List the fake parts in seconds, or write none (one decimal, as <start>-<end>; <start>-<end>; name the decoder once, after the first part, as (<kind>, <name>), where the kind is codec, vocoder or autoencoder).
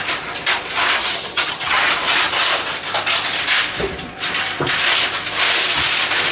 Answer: 1.0-1.8 (vocoder, HiFi-GAN)